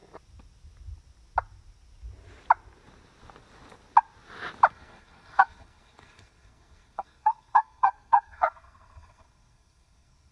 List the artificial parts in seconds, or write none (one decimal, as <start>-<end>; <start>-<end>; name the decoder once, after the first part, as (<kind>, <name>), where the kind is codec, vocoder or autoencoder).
4.7-10.3 (codec, SNAC)